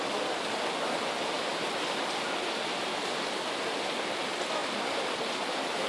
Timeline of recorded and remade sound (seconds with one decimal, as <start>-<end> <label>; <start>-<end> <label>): 0.0-1.5 recorded; 1.5-2.8 remade; 2.8-4.6 recorded; 4.6-5.9 remade